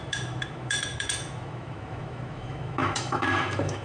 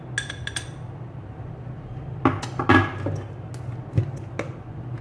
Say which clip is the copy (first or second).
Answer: first